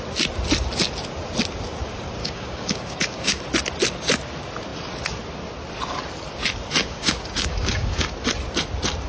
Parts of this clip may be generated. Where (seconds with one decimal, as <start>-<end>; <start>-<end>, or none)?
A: 2.2-3.4; 6.8-8.1